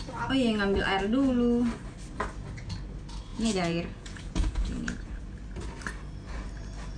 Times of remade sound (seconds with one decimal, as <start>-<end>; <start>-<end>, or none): 3.3-5.2